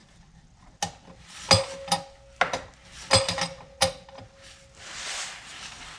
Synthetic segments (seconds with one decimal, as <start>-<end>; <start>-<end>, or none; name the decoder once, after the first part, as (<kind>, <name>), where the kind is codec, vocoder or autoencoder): none